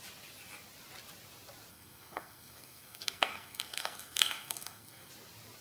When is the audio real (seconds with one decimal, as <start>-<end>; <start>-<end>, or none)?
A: 0.0-1.7; 5.1-5.6